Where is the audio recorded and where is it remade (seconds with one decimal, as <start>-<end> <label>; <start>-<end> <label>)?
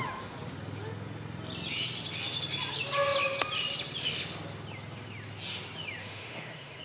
0.0-6.0 recorded; 6.0-6.8 remade